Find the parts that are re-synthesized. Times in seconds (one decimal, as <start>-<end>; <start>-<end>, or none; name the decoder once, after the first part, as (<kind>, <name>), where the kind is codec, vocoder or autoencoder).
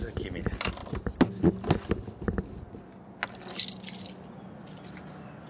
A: none